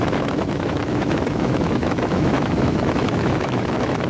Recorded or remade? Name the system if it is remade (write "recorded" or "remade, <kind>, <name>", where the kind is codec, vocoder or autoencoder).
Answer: remade, autoencoder, DAC-VAE